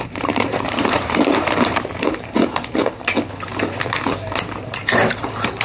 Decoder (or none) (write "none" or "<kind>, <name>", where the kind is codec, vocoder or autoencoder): vocoder, BigVGAN v2